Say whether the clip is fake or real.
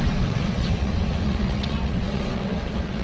fake